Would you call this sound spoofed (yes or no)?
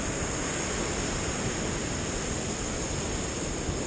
no